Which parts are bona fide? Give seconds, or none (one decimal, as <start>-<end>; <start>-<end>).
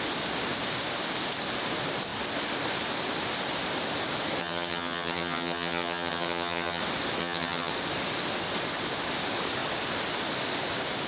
0.0-4.4; 6.8-7.2; 7.7-11.1